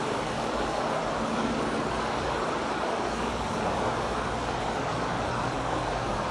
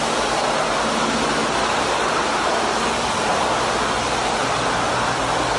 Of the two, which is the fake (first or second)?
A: first